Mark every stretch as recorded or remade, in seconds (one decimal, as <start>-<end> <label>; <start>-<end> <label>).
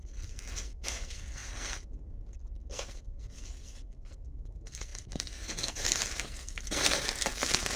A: 0.0-7.8 remade